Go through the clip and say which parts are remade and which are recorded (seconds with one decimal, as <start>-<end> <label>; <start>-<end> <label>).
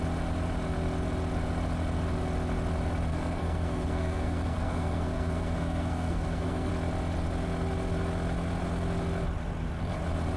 0.0-3.1 recorded; 3.1-6.7 remade; 6.7-10.4 recorded